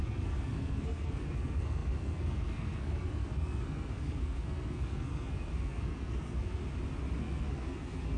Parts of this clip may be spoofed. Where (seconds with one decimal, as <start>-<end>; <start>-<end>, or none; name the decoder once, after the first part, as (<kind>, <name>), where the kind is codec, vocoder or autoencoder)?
0.0-6.6 (codec, SNAC); 7.2-8.2